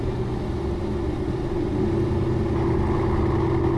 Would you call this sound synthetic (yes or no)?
no